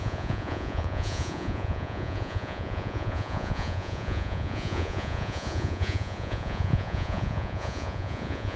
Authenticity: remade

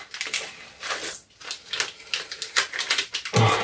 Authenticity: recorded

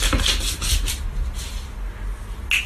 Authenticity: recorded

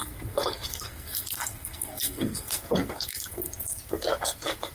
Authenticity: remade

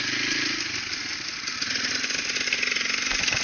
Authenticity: recorded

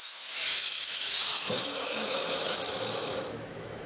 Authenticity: remade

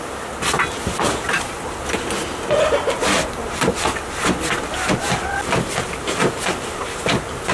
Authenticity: recorded